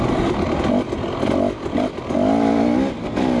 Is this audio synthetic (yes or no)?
no